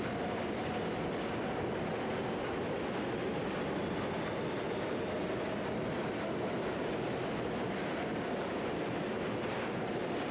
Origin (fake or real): real